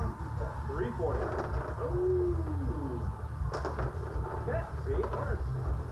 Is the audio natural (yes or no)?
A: yes